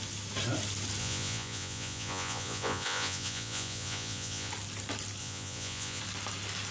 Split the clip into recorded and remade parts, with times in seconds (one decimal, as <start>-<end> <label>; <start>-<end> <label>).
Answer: 0.0-1.0 recorded; 1.0-4.5 remade; 4.5-5.2 recorded; 5.2-6.0 remade; 6.0-6.7 recorded